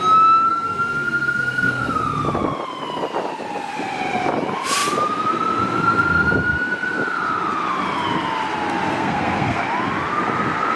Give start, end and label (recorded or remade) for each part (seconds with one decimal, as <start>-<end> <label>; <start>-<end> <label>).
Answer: 0.0-0.5 recorded; 0.5-2.0 remade; 2.0-8.9 recorded; 8.9-9.6 remade; 9.6-10.8 recorded